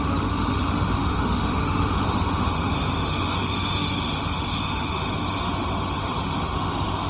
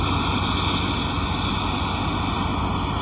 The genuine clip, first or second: second